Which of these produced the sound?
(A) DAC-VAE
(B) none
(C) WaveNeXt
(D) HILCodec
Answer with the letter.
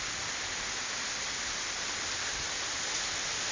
B